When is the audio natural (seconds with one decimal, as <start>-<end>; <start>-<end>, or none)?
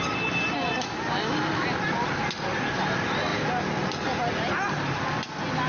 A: 0.0-5.7